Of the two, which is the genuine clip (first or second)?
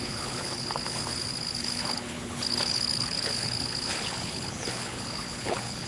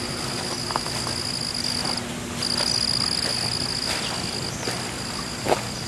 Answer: second